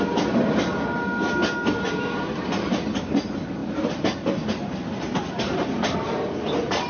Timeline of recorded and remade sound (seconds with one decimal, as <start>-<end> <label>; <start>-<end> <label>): 0.0-6.9 recorded